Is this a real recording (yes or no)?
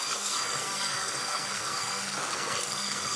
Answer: no